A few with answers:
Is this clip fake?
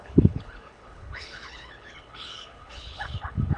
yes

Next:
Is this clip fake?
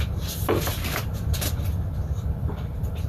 yes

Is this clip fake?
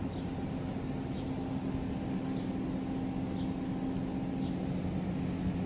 no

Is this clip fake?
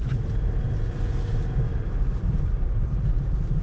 no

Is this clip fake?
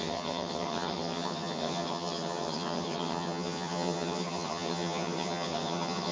yes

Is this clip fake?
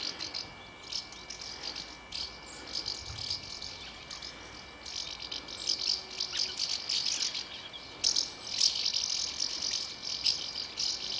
no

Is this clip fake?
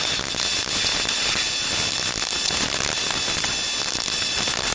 no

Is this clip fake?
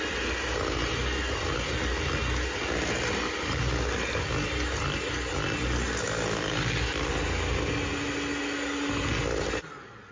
no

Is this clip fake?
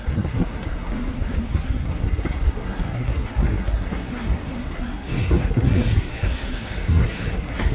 yes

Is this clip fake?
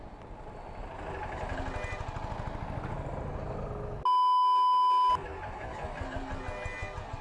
no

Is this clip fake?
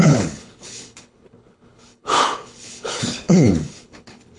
yes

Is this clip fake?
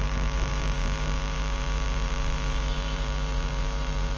yes